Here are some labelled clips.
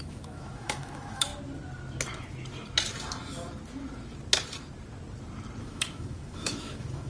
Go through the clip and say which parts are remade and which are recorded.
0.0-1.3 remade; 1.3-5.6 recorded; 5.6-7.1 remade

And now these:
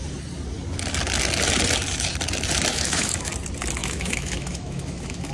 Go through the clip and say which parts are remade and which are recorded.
0.0-2.7 recorded; 2.7-3.3 remade; 3.3-3.8 recorded; 3.8-5.3 remade

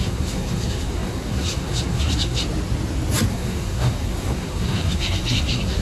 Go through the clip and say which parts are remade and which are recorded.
0.0-2.4 remade; 2.4-3.3 recorded; 3.3-5.8 remade

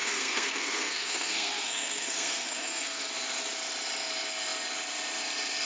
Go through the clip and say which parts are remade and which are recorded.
0.0-3.1 remade; 3.1-5.7 recorded

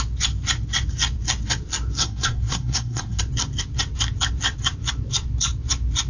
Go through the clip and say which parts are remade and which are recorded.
0.0-2.0 recorded; 2.0-3.2 remade; 3.2-6.1 recorded

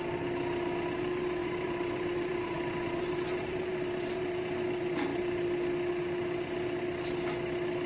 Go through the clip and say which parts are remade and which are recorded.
0.0-1.4 recorded; 1.4-4.4 remade; 4.4-7.9 recorded